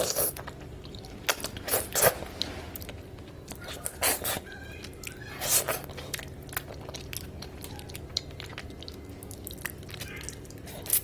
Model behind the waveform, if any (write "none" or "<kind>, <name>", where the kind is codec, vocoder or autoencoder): none